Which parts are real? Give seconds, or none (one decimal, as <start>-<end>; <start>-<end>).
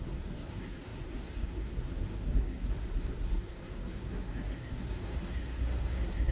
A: none